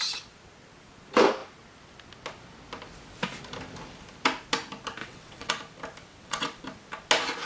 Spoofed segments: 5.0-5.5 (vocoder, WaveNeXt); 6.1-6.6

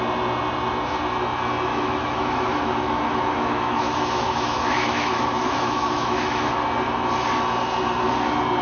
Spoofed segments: 1.7-6.5 (autoencoder, DAC-VAE)

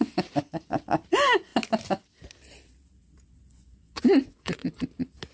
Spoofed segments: 3.4-4.8 (vocoder, Vocos)